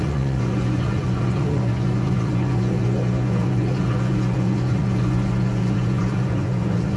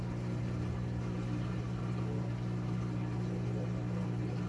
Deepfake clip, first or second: first